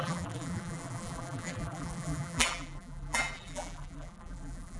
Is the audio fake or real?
fake